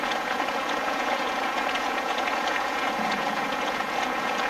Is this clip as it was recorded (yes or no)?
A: no